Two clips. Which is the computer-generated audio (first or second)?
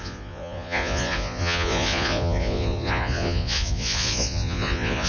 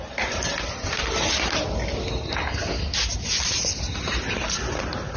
first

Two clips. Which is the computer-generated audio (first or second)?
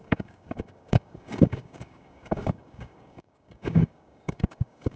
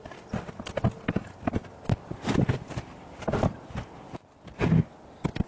first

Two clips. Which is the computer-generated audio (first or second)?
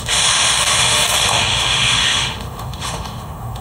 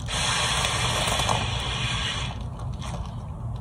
first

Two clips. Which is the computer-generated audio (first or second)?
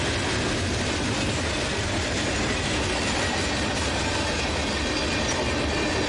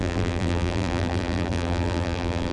second